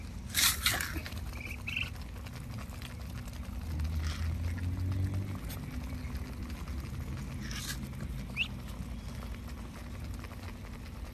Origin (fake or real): real